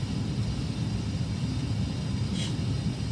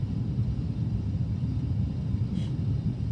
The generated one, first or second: second